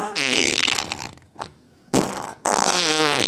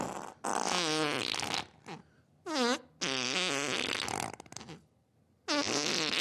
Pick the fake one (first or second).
first